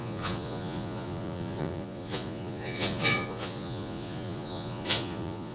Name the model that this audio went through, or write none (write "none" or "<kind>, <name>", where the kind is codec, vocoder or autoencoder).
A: vocoder, Vocos